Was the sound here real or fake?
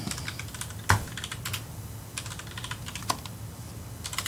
real